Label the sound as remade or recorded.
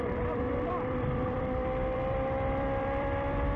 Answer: remade